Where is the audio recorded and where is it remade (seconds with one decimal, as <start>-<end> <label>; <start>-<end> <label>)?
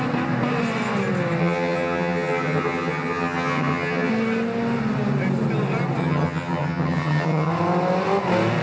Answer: 0.0-1.4 recorded; 1.4-4.1 remade; 4.1-6.0 recorded; 6.0-7.5 remade; 7.5-8.6 recorded